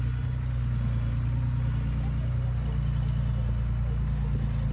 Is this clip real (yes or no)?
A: yes